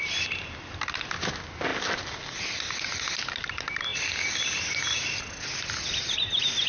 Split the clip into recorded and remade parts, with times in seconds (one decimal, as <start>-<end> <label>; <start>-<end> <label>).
0.0-6.7 recorded